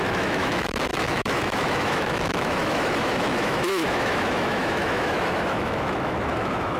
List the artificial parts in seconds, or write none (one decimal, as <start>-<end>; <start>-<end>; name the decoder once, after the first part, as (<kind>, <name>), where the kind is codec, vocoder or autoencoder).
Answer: 0.0-6.8 (autoencoder, DAC-VAE)